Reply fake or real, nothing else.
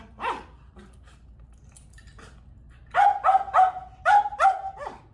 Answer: real